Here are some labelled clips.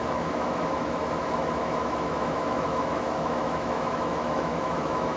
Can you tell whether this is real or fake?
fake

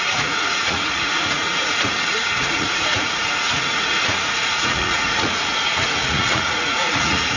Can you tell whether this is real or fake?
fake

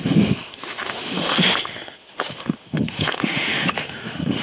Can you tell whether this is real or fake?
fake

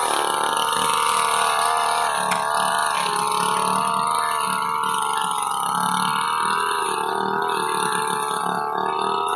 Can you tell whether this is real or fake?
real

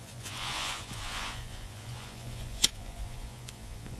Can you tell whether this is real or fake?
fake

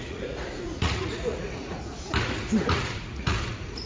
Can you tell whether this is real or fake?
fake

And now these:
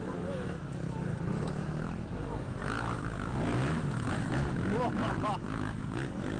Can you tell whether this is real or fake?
fake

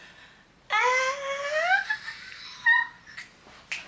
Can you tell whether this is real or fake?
real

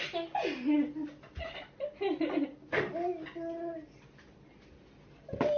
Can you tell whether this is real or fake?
real